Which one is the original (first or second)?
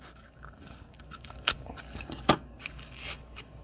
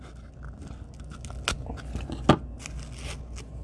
second